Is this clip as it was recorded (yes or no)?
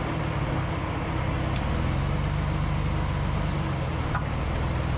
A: yes